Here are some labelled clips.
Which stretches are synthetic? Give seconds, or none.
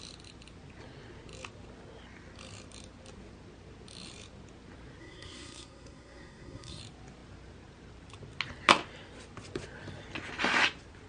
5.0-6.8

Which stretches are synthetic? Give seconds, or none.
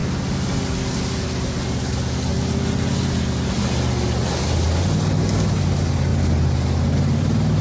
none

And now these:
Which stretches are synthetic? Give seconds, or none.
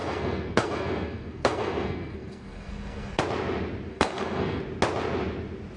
0.0-3.2; 3.9-4.6